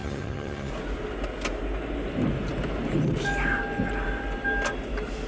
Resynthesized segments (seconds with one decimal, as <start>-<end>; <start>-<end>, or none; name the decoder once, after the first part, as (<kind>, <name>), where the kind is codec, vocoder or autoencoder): 0.0-0.7 (vocoder, HiFi-GAN)